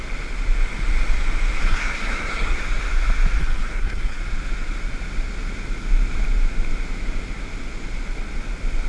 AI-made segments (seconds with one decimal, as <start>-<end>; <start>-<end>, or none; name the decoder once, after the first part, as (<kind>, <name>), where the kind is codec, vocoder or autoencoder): 1.6-2.6 (codec, SNAC); 3.4-4.2